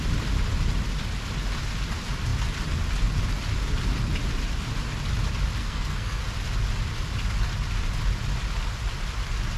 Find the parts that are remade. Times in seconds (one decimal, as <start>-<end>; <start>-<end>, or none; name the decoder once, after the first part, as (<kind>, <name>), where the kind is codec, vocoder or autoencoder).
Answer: 5.6-6.2 (codec, SNAC)